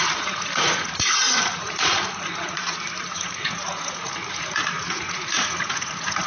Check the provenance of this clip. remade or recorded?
remade